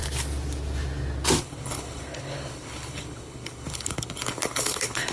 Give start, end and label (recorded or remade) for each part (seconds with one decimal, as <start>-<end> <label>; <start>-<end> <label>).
0.0-1.4 recorded; 1.4-5.1 remade